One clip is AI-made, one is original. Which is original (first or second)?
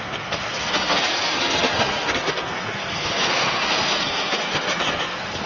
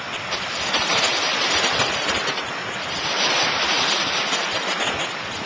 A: second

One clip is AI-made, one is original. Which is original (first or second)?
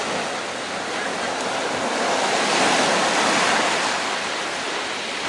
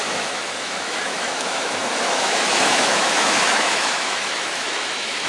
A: first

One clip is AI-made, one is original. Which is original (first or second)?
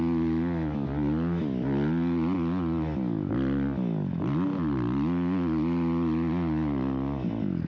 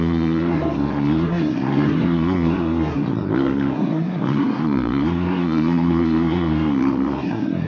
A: first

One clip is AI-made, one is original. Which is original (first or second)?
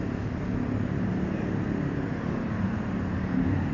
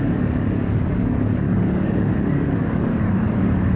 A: first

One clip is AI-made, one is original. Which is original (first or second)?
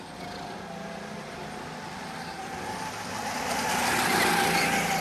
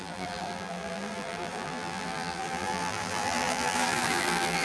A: first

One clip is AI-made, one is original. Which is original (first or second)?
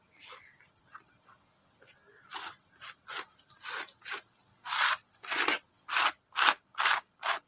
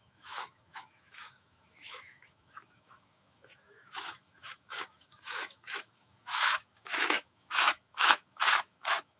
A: first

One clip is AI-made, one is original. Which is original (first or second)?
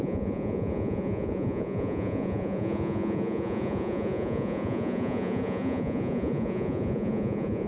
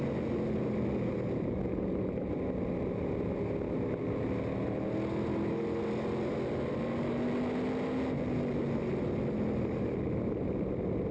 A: second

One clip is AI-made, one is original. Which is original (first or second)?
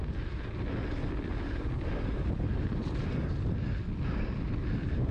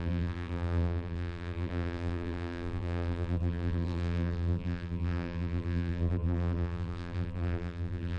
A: first